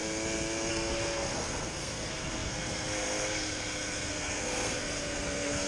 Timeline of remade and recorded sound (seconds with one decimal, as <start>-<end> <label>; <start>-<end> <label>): 0.0-0.7 recorded; 0.7-5.7 remade